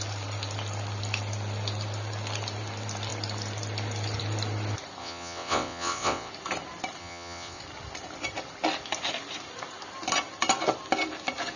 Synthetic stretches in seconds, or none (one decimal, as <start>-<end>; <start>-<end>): 5.0-6.3; 7.0-7.6